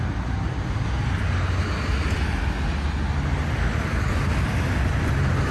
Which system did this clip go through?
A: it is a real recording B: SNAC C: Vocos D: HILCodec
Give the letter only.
A